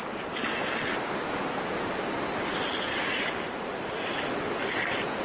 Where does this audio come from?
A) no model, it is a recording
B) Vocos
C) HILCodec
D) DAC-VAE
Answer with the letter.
A